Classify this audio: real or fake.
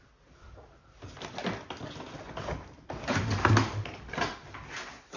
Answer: real